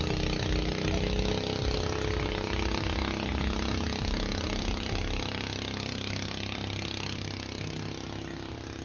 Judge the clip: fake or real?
real